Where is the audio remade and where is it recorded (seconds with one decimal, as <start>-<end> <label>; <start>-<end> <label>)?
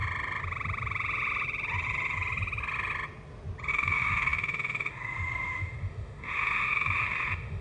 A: 0.0-3.7 recorded; 3.7-7.6 remade